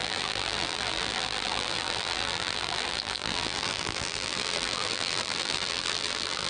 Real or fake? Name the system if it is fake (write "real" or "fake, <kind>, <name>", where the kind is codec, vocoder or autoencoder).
fake, vocoder, BigVGAN v2